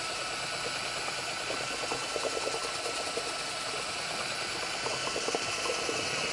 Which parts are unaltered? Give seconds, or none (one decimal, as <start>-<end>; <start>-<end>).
0.0-6.3